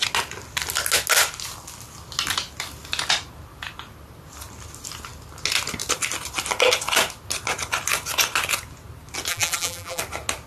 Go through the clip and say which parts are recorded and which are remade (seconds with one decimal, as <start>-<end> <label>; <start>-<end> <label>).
0.0-9.3 recorded; 9.3-10.0 remade; 10.0-10.5 recorded